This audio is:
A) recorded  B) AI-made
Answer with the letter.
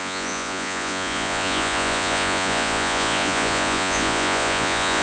B